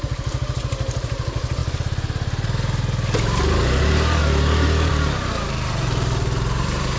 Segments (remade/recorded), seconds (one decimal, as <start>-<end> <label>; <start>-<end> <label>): 0.0-1.6 remade; 1.6-3.8 recorded; 3.8-4.2 remade; 4.2-4.9 recorded; 4.9-7.0 remade